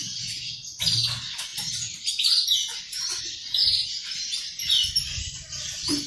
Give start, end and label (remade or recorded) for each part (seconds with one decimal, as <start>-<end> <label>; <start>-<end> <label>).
0.0-6.1 recorded